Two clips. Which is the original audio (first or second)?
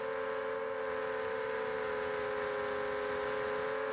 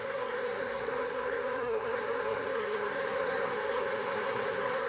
first